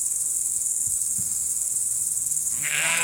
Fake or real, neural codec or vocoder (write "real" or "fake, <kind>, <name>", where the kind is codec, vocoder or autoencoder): fake, codec, SNAC